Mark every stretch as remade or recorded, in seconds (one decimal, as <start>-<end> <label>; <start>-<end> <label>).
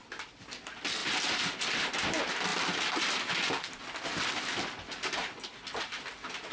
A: 0.0-6.5 recorded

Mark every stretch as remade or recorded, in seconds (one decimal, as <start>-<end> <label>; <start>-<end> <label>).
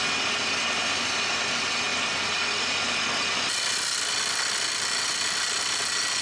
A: 0.0-6.2 recorded